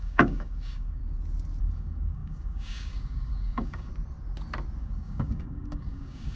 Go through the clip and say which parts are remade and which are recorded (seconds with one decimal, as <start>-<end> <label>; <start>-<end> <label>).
0.0-1.0 remade; 1.0-1.6 recorded; 1.6-3.9 remade; 3.9-4.8 recorded; 4.8-6.4 remade